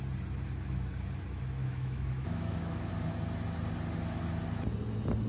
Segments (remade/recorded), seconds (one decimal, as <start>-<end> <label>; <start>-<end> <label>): 0.0-1.6 recorded; 1.6-2.9 remade; 2.9-5.3 recorded